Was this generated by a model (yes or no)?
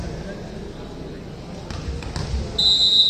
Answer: no